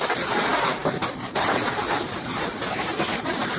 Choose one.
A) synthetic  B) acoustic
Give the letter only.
A